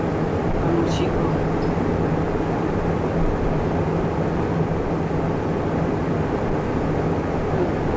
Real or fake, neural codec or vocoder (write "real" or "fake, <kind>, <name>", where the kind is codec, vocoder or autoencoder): real